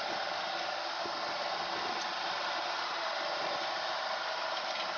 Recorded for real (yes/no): yes